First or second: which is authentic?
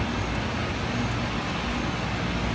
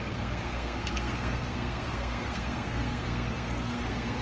first